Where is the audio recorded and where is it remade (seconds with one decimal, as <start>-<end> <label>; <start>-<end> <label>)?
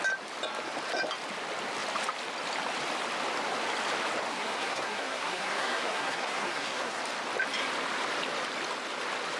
0.0-4.3 recorded; 4.3-7.0 remade; 7.0-9.4 recorded